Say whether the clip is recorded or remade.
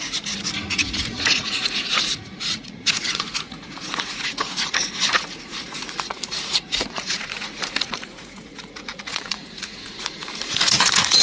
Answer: remade